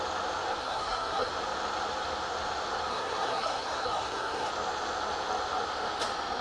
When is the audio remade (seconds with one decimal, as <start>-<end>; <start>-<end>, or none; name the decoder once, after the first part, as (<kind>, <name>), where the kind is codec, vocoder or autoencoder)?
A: 0.6-1.3 (codec, SNAC); 2.9-4.5